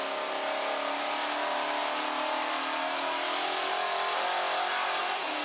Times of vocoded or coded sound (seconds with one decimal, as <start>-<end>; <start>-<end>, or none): none